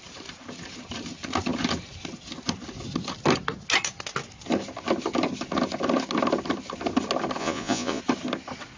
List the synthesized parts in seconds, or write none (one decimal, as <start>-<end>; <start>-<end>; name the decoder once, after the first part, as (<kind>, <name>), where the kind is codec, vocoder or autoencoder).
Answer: 7.4-8.0 (vocoder, Vocos)